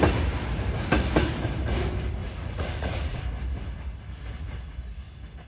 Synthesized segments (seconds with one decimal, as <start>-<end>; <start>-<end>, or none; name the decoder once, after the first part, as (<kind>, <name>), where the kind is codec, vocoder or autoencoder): 2.2-3.2 (vocoder, Vocos)